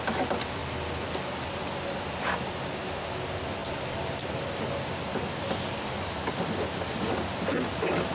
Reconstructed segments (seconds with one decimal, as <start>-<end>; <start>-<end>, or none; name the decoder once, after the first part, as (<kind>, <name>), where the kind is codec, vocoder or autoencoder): none